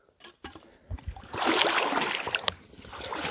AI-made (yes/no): no